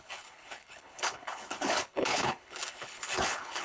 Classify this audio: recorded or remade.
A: remade